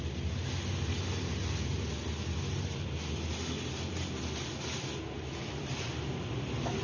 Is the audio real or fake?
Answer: real